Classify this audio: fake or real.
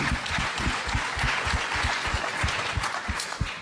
fake